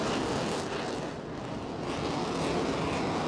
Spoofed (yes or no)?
no